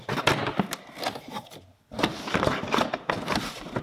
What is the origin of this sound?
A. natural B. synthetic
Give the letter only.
A